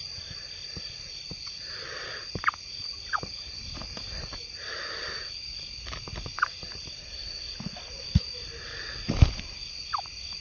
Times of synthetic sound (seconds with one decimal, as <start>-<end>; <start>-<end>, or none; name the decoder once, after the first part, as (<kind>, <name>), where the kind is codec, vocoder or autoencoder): none